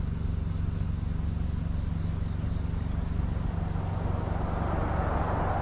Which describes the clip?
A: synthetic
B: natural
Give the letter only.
B